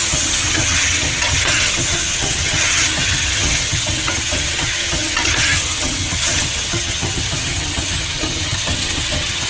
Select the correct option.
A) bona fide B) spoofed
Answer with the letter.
B